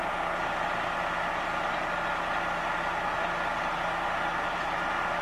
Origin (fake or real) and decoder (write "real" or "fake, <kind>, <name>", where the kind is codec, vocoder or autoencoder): real